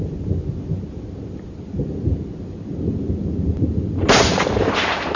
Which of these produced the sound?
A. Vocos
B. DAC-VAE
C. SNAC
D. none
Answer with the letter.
D